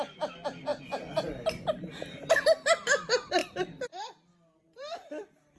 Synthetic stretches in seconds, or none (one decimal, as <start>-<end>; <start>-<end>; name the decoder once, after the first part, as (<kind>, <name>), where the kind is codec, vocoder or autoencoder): 3.4-5.6 (vocoder, BigVGAN v2)